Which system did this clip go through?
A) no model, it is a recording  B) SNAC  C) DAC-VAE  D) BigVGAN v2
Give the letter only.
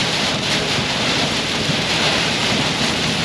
D